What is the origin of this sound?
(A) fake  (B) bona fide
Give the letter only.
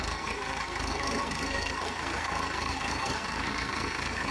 A